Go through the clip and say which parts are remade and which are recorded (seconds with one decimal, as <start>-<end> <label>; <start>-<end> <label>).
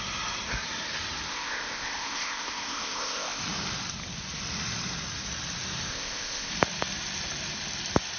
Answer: 0.0-1.3 recorded; 1.3-3.4 remade; 3.4-5.9 recorded; 5.9-6.5 remade; 6.5-8.2 recorded